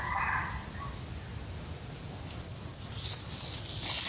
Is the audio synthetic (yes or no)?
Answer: no